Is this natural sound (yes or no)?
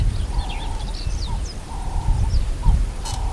yes